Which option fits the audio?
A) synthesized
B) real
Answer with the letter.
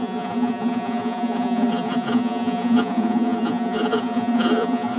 A